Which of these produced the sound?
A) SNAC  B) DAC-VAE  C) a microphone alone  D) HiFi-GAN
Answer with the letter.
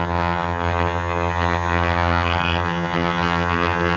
D